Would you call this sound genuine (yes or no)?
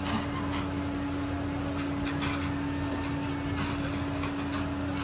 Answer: yes